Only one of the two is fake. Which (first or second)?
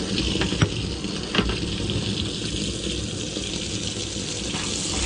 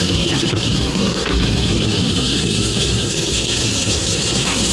second